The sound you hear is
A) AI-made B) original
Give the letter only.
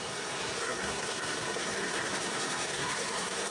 A